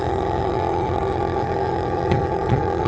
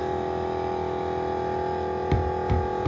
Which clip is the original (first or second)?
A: second